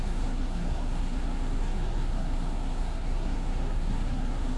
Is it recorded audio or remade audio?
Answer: remade